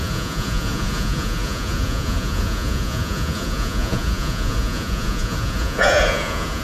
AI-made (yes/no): yes